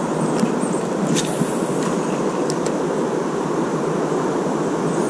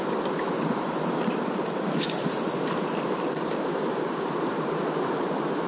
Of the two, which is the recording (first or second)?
first